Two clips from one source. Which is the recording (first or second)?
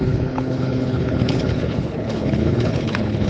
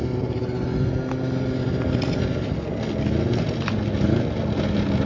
second